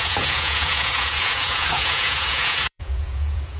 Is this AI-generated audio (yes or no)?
yes